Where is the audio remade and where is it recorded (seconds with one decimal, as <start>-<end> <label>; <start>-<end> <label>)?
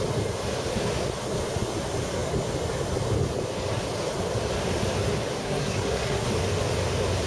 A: 0.0-5.4 recorded; 5.4-6.3 remade; 6.3-7.3 recorded